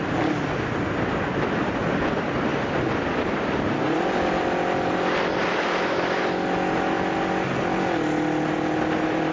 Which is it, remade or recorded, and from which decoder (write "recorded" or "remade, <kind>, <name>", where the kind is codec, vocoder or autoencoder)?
recorded